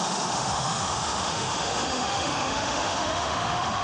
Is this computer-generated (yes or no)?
yes